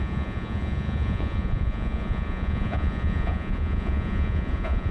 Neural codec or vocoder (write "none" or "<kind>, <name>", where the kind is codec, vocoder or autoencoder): vocoder, Vocos